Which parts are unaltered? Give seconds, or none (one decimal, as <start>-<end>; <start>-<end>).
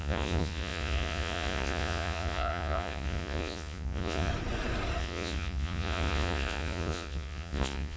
4.3-5.0